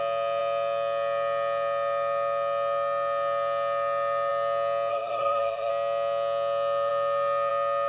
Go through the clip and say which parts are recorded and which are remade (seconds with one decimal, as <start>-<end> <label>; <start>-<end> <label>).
0.0-4.9 recorded; 4.9-5.7 remade; 5.7-7.9 recorded